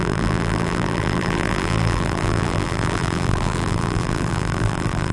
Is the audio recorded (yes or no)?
no